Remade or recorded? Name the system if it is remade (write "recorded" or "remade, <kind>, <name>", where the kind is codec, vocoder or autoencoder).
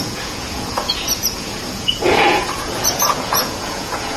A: remade, vocoder, Vocos